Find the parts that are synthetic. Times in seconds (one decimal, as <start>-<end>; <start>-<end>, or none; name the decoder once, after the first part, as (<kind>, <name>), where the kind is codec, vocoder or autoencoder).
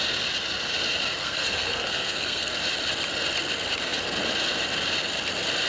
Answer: 1.2-2.5 (codec, SNAC)